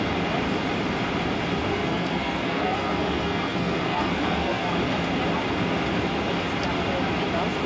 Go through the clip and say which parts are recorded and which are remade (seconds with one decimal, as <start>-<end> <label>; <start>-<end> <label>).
0.0-1.7 recorded; 1.7-4.7 remade; 4.7-7.7 recorded